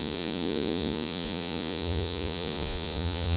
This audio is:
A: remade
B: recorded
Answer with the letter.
A